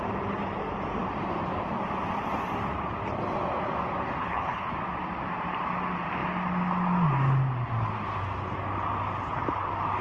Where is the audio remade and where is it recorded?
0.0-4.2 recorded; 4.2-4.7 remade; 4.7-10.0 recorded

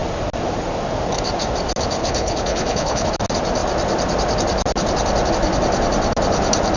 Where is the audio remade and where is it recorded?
0.0-2.0 recorded; 2.0-3.1 remade; 3.1-6.8 recorded

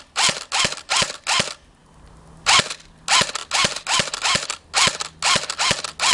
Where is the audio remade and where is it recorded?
0.0-6.1 recorded

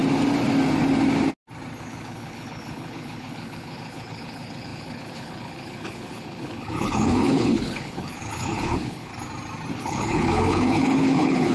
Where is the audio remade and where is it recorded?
0.0-1.8 recorded; 1.8-9.1 remade; 9.1-9.7 recorded; 9.7-11.5 remade